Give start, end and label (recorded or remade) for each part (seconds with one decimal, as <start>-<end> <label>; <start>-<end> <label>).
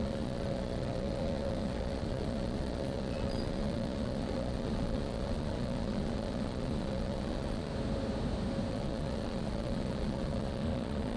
0.0-7.7 remade; 7.7-8.7 recorded; 8.7-11.2 remade